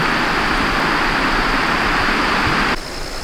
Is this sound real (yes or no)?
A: yes